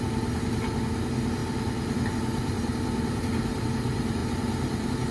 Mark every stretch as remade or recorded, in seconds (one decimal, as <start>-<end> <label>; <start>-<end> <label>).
0.0-5.1 recorded